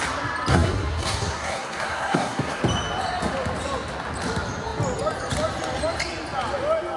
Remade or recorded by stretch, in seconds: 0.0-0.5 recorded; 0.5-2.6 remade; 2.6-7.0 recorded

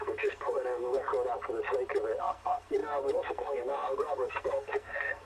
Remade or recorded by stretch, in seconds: 0.0-1.1 remade; 1.1-2.2 recorded; 2.2-5.3 remade